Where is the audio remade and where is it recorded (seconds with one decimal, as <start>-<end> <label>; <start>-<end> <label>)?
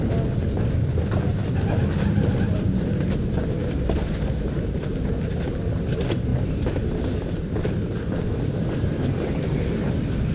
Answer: 0.0-3.6 recorded; 3.6-4.8 remade; 4.8-6.3 recorded; 6.3-9.9 remade; 9.9-10.3 recorded